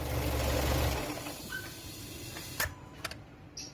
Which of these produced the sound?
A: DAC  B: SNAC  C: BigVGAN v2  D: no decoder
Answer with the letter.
D